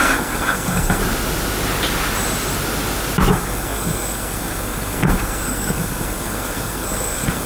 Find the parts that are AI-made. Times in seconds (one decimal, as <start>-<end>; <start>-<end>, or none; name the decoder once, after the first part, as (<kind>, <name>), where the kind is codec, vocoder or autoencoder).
0.0-1.0 (codec, SNAC); 3.3-7.5